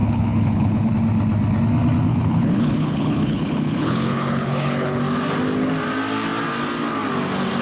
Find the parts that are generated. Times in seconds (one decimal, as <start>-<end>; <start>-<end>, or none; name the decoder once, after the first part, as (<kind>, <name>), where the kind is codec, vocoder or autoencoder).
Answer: 0.0-0.9 (codec, HILCodec); 2.1-5.0